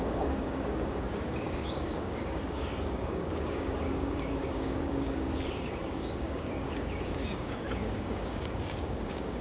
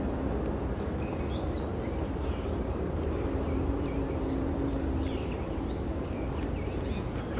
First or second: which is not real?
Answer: first